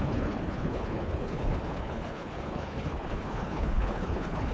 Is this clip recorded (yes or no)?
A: no